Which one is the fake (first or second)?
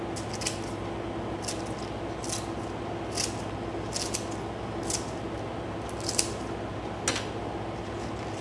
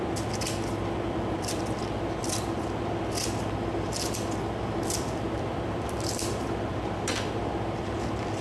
second